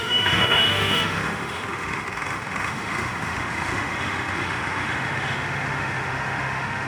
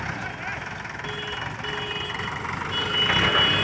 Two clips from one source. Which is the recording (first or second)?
second